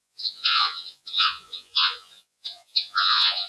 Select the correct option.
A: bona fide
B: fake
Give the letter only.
B